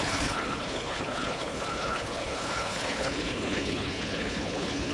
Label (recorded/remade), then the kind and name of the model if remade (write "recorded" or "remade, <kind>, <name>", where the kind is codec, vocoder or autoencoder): remade, codec, HILCodec